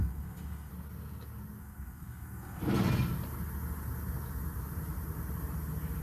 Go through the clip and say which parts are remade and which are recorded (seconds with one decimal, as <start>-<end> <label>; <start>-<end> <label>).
0.0-0.7 remade; 0.7-1.6 recorded; 1.6-2.6 remade; 2.6-6.0 recorded

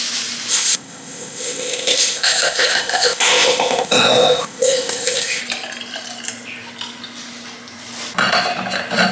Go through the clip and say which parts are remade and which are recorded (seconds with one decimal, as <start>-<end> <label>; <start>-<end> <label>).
0.0-0.5 recorded; 0.5-5.4 remade; 5.4-9.1 recorded